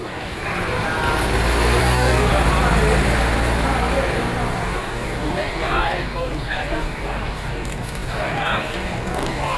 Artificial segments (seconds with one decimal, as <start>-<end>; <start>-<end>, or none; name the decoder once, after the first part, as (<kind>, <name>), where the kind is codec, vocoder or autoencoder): 0.0-0.4 (codec, DAC); 1.8-2.3; 4.6-9.6